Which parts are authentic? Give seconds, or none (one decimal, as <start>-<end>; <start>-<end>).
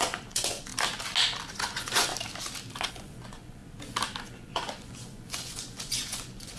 0.7-1.6; 2.1-2.9; 3.6-4.2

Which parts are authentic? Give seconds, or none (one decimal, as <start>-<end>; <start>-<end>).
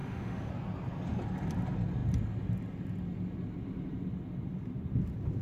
0.5-5.4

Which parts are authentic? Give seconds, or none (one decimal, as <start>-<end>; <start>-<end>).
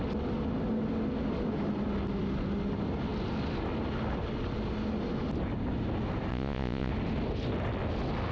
0.0-6.3; 6.9-8.3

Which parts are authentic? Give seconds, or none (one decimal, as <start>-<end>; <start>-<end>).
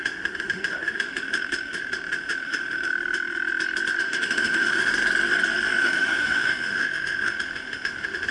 2.9-4.0; 4.9-5.8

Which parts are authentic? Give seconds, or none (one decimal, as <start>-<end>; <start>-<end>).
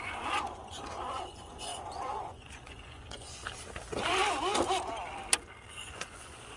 3.4-5.7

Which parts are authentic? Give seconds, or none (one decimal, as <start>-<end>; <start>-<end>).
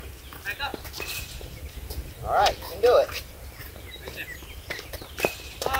0.0-2.2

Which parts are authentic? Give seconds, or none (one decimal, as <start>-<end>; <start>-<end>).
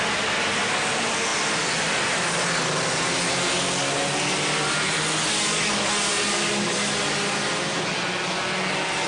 0.0-9.1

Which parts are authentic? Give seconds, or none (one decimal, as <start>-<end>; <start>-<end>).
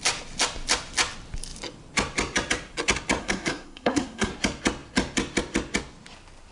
0.0-3.2; 4.3-6.5